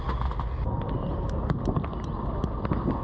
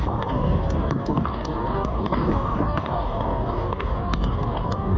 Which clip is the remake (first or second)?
second